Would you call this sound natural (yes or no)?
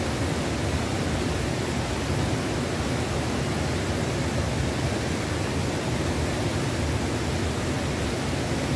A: yes